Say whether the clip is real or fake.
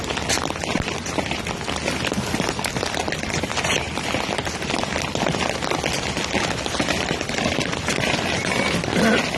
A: real